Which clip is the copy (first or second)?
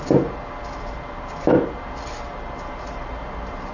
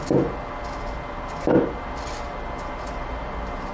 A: first